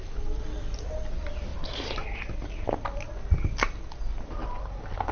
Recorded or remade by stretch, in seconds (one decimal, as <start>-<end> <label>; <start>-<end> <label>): 0.0-5.1 recorded